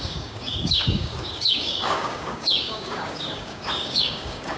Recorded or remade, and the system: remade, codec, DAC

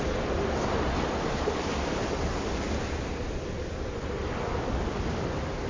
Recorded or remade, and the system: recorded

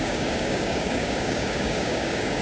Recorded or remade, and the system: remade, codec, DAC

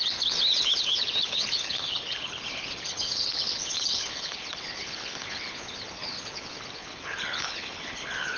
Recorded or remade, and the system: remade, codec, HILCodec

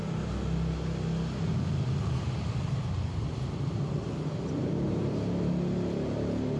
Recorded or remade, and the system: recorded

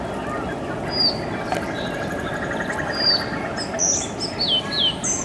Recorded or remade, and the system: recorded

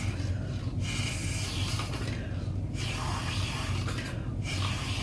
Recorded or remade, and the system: recorded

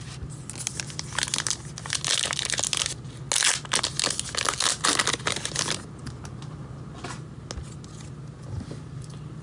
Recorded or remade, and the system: recorded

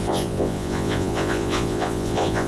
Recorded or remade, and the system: remade, vocoder, Vocos